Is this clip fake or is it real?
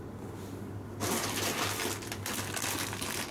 real